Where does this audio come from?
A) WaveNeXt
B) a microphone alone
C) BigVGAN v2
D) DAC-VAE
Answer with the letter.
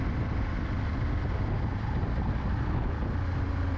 B